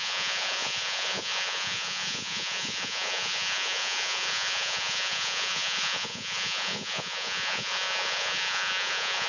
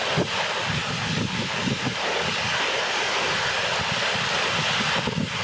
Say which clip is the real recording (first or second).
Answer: second